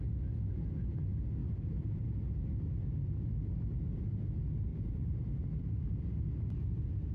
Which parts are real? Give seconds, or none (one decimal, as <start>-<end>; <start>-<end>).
0.0-1.4; 2.0-4.7